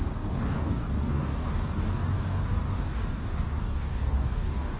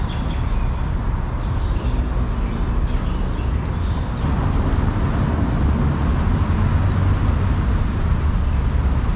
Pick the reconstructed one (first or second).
first